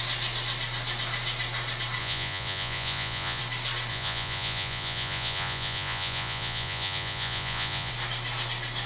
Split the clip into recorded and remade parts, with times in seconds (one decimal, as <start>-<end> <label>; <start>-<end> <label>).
0.0-2.0 recorded; 2.0-3.4 remade; 3.4-3.9 recorded; 3.9-7.9 remade; 7.9-8.9 recorded